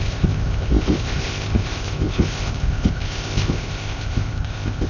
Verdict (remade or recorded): remade